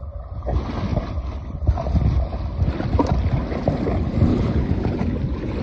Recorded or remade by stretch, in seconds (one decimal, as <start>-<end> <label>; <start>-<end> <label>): 0.0-4.3 recorded; 4.3-4.9 remade; 4.9-5.6 recorded